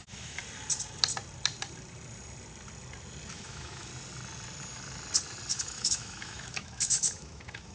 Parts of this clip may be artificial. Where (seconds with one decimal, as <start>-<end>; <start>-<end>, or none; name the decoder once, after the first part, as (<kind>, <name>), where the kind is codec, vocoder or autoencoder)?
0.0-0.4 (autoencoder, DAC-VAE); 3.3-3.9; 5.5-7.7